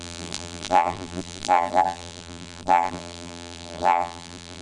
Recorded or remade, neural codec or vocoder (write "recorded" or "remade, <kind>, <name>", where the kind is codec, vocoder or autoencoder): remade, vocoder, BigVGAN v2